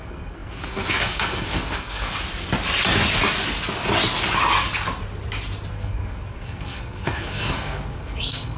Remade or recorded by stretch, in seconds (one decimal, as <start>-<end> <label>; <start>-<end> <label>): 0.0-2.1 remade; 2.1-5.7 recorded; 5.7-8.6 remade